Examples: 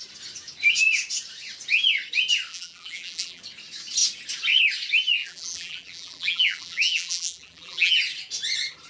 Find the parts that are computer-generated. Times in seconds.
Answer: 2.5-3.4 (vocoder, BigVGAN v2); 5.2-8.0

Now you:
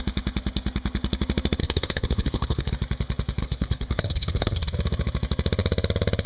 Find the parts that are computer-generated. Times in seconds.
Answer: 1.6-2.7 (codec, HILCodec); 3.4-4.6

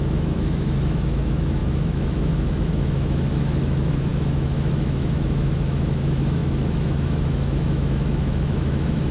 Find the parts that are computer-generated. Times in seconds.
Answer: 0.0-9.1 (autoencoder, DAC-VAE)

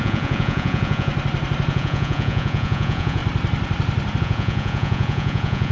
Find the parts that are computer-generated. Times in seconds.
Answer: 0.0-1.1 (vocoder, Vocos); 1.7-3.2; 4.2-5.7

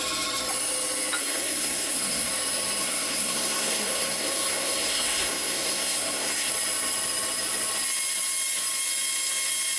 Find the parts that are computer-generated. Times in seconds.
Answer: 1.2-2.3 (codec, SNAC); 2.8-6.5

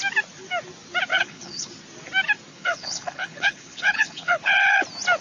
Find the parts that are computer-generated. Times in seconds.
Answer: 1.1-1.7 (codec, HILCodec); 2.5-4.8

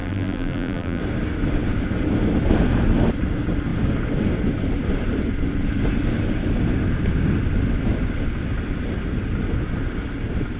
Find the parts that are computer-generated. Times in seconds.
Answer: 0.0-1.0 (vocoder, BigVGAN v2)

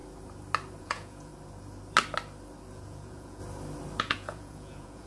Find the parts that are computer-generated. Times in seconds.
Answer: 0.8-1.3 (vocoder, Vocos); 2.7-3.4; 4.0-5.1